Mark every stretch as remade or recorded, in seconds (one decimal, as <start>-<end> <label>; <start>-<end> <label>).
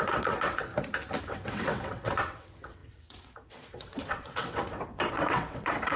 0.0-0.7 remade; 0.7-1.2 recorded; 1.2-6.0 remade